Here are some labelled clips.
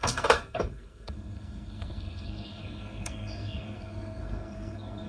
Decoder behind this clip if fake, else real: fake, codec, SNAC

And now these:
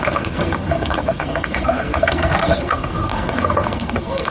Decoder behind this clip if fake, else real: fake, codec, SNAC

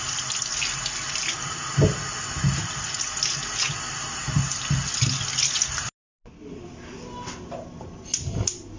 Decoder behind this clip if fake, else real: real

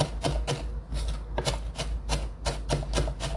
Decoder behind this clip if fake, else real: real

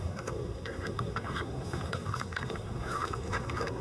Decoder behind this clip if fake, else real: fake, codec, SNAC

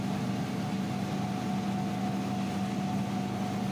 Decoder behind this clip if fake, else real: real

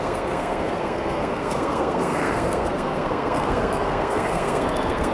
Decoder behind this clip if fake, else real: fake, codec, SNAC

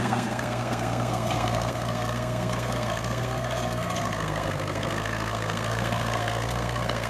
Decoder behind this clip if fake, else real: fake, codec, SNAC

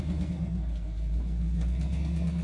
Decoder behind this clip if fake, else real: fake, codec, SNAC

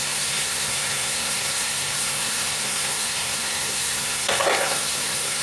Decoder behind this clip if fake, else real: fake, codec, SNAC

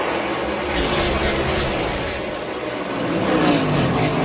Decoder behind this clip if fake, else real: real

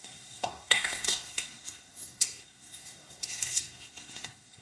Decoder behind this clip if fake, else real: fake, codec, SNAC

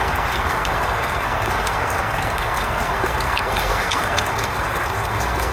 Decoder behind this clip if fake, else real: fake, codec, SNAC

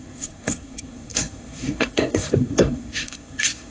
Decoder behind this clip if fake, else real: fake, codec, SNAC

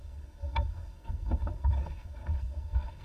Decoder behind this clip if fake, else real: fake, codec, SNAC